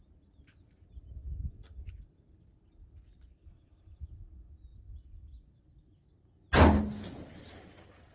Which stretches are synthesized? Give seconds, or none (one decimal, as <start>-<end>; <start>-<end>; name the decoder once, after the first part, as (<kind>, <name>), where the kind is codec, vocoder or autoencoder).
none